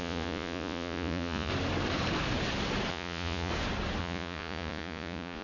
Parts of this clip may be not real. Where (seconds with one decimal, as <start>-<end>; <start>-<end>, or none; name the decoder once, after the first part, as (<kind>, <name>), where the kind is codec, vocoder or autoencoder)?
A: 0.0-1.5 (vocoder, Vocos); 2.9-3.5; 4.0-5.4